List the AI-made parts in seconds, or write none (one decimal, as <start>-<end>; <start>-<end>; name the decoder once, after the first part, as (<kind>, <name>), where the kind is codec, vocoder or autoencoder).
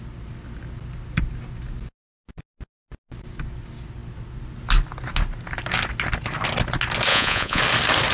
7.1-7.6 (vocoder, Vocos)